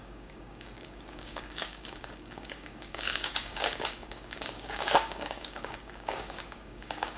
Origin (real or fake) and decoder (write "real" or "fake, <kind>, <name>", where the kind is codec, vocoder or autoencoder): fake, codec, DAC